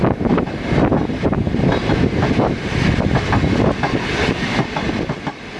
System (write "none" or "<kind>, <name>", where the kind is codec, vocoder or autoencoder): none